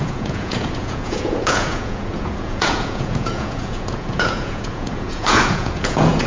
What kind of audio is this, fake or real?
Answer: fake